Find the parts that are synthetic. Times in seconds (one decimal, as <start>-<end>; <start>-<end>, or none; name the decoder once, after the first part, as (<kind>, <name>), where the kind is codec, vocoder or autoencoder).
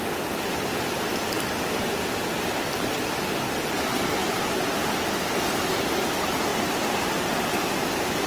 4.2-5.1 (vocoder, BigVGAN v2)